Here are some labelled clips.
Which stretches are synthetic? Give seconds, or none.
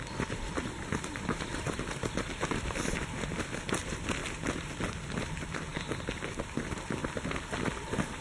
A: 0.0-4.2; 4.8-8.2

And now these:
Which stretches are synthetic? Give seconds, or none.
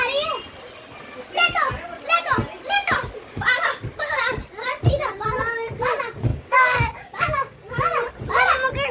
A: 6.3-7.8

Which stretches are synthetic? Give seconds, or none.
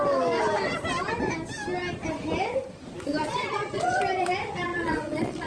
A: 3.2-4.0; 4.7-5.5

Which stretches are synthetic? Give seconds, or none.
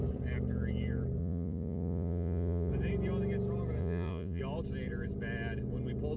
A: 1.2-2.7; 3.8-4.4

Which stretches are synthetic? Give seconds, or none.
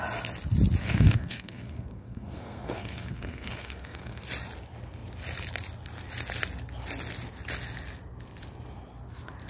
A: 0.8-4.2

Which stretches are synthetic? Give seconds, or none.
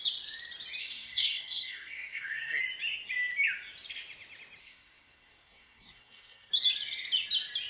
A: 0.8-2.6; 4.6-6.5